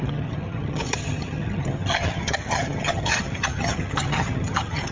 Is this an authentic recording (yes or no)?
no